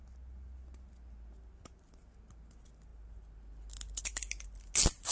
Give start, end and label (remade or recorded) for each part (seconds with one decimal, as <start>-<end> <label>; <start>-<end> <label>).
0.0-5.1 recorded